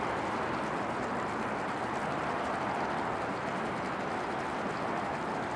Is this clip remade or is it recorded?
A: recorded